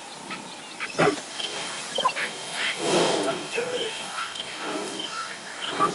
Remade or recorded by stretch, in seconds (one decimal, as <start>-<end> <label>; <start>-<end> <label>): 0.0-1.3 recorded; 1.3-1.8 remade; 1.8-2.2 recorded; 2.2-5.9 remade